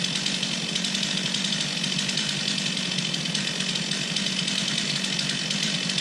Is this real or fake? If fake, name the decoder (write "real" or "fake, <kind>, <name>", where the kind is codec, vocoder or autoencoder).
real